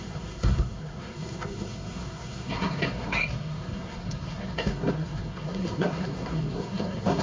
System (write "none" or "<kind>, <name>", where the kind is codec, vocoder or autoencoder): codec, SNAC